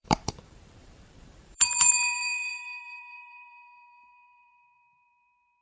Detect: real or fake fake